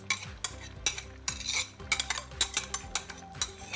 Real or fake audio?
real